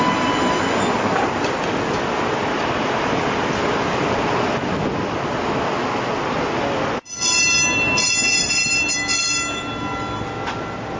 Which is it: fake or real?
real